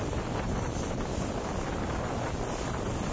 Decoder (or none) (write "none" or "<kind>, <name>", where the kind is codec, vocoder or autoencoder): none